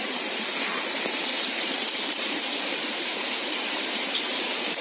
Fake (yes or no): yes